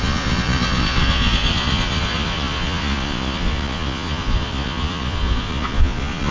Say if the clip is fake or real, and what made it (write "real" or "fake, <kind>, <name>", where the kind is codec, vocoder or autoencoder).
fake, vocoder, Vocos